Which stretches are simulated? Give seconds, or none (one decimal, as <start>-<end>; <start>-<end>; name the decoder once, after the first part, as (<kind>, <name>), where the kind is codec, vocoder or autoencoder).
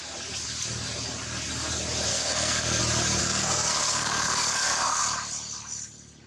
2.1-2.8 (codec, SNAC); 3.2-5.0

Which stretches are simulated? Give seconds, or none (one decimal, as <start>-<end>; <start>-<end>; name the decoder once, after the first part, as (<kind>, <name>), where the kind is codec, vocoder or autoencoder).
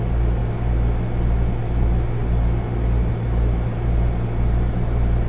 none